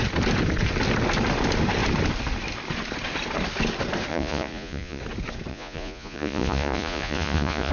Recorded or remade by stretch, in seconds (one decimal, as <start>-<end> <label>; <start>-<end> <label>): 0.0-4.1 recorded; 4.1-5.0 remade; 5.0-5.5 recorded; 5.5-7.7 remade